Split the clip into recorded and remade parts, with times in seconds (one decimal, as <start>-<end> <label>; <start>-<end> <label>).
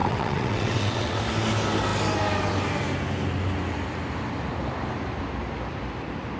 0.0-1.2 remade; 1.2-6.4 recorded